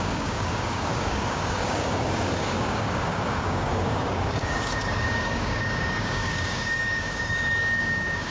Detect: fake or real fake